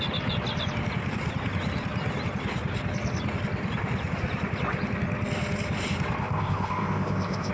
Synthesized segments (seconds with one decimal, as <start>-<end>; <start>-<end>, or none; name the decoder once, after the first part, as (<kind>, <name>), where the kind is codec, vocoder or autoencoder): 6.2-7.5 (codec, ZipCodec)